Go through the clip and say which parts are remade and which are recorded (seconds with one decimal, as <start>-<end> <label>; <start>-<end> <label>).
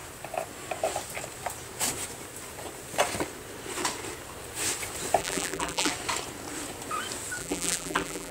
0.0-5.2 recorded; 5.2-5.9 remade; 5.9-7.4 recorded; 7.4-8.3 remade